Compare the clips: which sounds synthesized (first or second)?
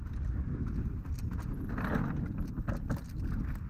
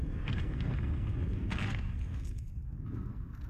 second